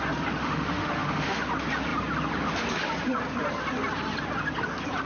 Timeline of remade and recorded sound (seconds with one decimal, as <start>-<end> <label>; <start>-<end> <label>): 0.0-0.4 recorded; 0.4-1.4 remade; 1.4-5.1 recorded